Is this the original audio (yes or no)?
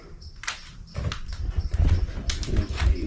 yes